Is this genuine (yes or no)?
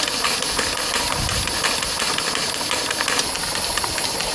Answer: yes